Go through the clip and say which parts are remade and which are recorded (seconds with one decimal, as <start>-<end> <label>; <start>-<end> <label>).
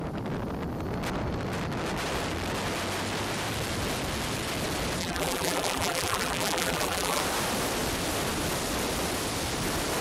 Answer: 0.0-5.0 recorded; 5.0-7.2 remade; 7.2-10.0 recorded